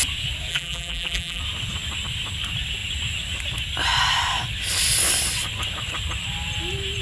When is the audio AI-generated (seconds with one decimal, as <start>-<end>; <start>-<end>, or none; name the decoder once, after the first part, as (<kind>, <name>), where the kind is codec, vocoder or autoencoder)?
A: 0.5-1.4 (vocoder, BigVGAN v2)

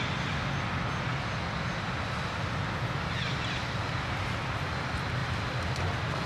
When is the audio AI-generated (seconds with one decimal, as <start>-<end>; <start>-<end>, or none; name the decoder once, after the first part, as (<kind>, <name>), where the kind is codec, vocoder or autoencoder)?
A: 3.2-3.7 (vocoder, BigVGAN v2); 5.2-5.8